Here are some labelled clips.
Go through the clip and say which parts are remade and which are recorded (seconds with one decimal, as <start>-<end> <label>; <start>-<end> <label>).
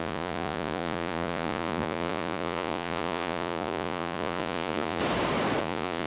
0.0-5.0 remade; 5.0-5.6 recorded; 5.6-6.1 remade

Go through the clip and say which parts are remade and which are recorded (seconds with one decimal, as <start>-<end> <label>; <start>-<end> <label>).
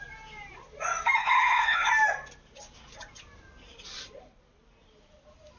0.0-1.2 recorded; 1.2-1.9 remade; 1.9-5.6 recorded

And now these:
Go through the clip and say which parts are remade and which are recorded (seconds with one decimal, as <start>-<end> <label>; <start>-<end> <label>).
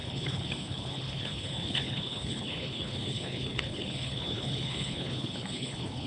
0.0-6.1 remade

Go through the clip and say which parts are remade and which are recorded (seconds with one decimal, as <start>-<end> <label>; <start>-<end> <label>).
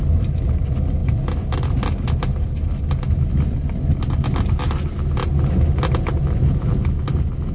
0.0-7.5 recorded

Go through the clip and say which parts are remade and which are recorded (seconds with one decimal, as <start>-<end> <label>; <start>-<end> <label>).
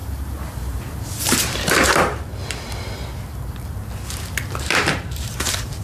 0.0-1.2 recorded; 1.2-2.4 remade; 2.4-4.6 recorded; 4.6-5.8 remade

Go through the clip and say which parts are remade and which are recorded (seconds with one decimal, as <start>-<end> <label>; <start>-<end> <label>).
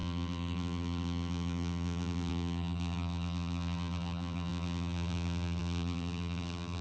0.0-6.8 remade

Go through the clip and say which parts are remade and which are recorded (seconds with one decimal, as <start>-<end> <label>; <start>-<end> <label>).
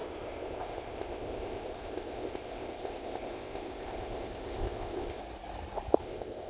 0.0-5.2 remade; 5.2-6.0 recorded; 6.0-6.5 remade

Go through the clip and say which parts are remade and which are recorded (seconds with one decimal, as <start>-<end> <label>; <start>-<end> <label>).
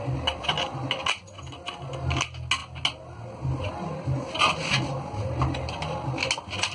0.0-6.7 recorded